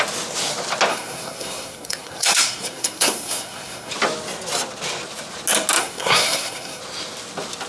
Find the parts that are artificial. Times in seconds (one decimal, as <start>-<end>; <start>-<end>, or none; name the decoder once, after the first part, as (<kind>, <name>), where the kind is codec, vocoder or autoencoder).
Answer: 0.9-3.9 (codec, SNAC); 5.8-6.8